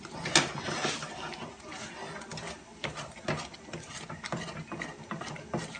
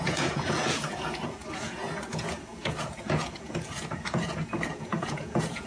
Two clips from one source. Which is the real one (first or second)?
first